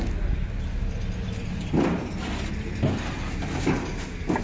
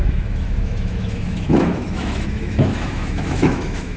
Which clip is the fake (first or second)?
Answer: second